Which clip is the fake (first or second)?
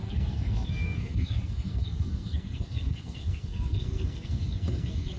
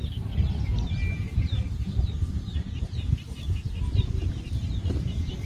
first